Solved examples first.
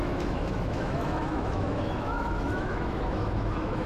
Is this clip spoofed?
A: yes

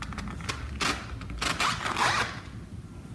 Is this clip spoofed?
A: no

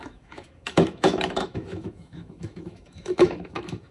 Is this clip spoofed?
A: yes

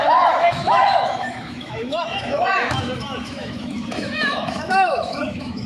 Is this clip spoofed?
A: yes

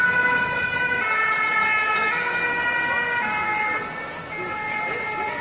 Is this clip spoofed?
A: no